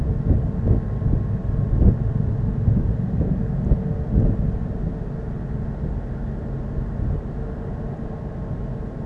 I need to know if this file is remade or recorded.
recorded